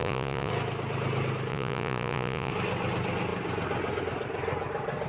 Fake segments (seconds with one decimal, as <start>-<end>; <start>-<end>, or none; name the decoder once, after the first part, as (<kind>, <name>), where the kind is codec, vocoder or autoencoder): 0.0-0.5 (vocoder, Vocos); 1.5-2.5